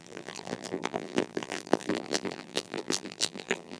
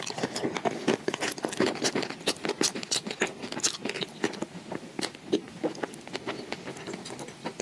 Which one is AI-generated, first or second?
first